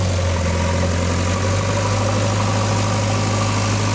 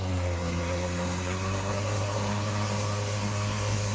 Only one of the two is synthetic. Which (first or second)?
second